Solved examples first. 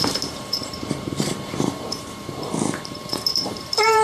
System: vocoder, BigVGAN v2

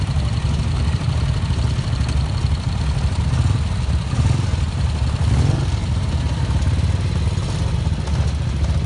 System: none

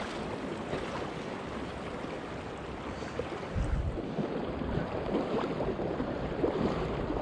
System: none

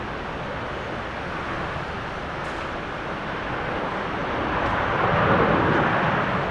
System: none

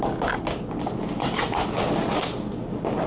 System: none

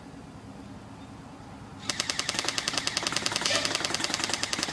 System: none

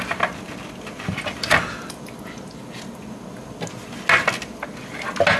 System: none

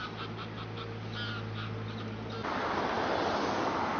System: none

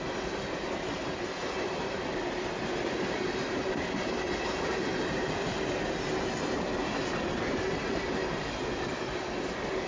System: none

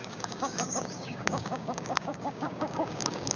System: codec, DAC